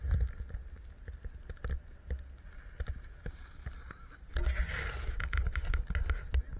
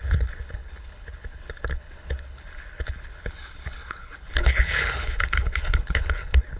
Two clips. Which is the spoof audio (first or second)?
second